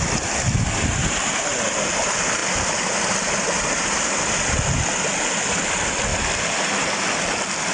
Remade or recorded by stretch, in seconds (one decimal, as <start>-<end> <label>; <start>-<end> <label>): 0.0-7.7 recorded